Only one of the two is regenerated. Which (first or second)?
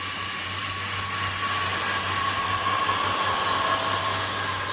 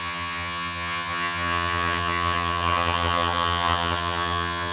second